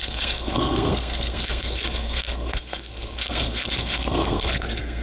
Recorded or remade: remade